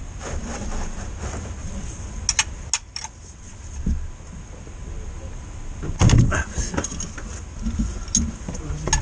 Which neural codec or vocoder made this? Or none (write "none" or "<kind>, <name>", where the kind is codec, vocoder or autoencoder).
none